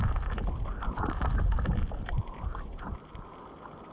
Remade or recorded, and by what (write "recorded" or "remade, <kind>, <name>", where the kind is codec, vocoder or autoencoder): recorded